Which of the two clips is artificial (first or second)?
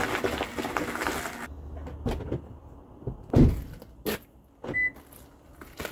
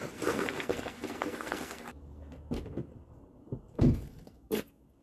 second